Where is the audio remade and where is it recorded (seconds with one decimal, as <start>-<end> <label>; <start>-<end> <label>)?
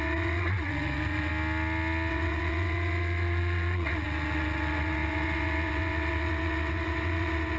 0.0-1.3 remade; 1.3-2.1 recorded; 2.1-7.6 remade